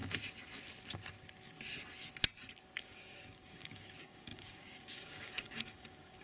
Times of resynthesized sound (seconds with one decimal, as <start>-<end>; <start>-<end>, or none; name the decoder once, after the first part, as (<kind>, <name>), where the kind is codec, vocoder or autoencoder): 2.8-6.2 (codec, DAC)